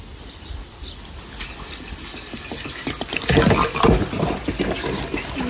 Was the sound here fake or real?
real